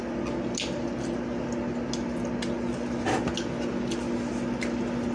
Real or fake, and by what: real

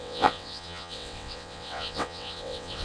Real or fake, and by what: fake, vocoder, WaveNeXt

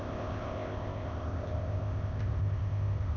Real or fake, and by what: fake, codec, ZipCodec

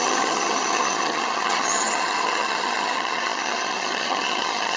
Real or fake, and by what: fake, vocoder, HiFi-GAN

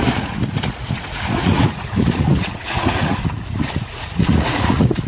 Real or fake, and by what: fake, vocoder, Vocos